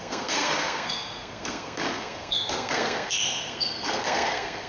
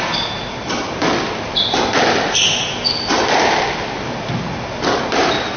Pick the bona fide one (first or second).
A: second